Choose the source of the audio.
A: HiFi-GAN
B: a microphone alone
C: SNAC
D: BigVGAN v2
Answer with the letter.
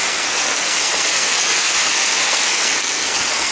C